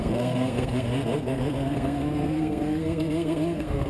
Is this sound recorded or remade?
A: remade